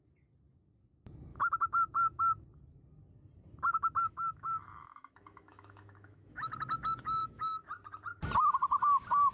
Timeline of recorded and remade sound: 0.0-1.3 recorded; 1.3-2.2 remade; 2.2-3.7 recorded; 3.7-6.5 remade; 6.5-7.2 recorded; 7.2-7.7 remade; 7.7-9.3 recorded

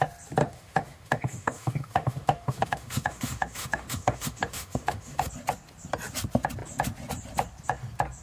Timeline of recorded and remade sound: 0.0-0.4 recorded; 0.4-5.3 remade; 5.3-8.2 recorded